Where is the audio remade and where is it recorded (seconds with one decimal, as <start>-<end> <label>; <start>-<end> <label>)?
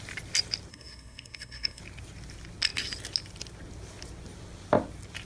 0.0-0.7 recorded; 0.7-1.8 remade; 1.8-5.2 recorded